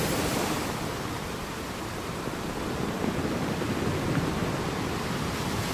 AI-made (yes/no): no